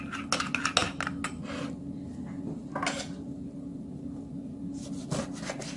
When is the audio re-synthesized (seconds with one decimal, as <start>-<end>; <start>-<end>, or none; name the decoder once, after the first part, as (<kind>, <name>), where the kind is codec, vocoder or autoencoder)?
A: none